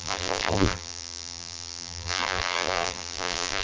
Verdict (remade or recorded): remade